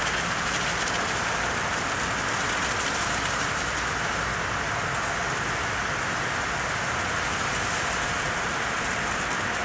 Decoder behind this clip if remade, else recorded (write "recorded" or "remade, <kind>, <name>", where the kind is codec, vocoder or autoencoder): recorded